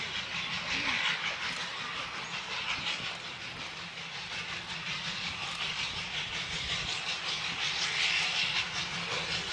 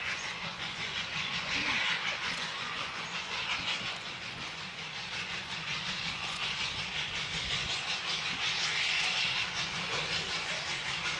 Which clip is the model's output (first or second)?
second